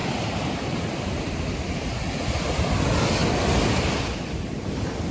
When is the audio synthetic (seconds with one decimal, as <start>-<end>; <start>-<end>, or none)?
none